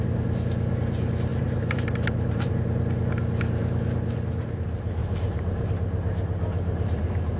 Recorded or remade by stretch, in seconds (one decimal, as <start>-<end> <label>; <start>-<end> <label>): 0.0-1.3 recorded; 1.3-2.5 remade; 2.5-5.0 recorded; 5.0-5.7 remade; 5.7-6.5 recorded; 6.5-7.4 remade